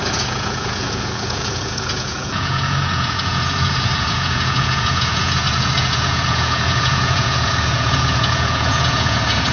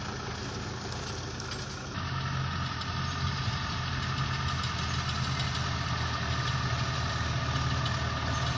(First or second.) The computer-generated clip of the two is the first